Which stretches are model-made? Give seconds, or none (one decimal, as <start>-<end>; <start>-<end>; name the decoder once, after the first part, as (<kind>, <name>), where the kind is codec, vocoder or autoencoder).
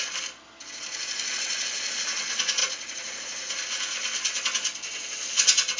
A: 2.6-3.5 (vocoder, Vocos)